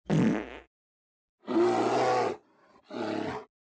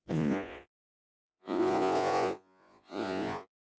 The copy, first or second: second